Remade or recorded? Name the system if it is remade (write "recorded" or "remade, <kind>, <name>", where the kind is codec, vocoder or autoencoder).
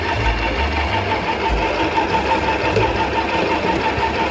recorded